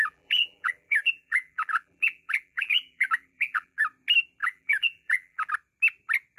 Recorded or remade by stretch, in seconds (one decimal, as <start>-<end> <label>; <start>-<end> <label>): 0.0-3.8 remade; 3.8-4.4 recorded; 4.4-5.5 remade; 5.5-6.4 recorded